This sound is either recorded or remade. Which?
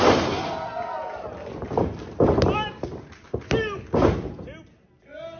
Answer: recorded